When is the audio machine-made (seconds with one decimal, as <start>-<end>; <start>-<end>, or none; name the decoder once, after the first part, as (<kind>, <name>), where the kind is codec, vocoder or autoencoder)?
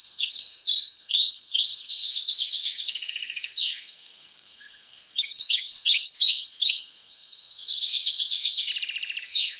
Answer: 0.0-8.7 (codec, SNAC); 9.2-9.6